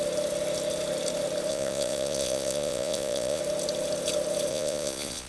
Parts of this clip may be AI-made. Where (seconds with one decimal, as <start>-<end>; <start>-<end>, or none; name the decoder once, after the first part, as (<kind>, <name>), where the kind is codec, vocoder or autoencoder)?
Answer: 1.5-3.4 (vocoder, Vocos); 4.5-5.3